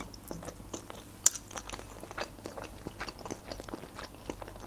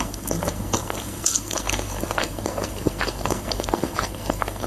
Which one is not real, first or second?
second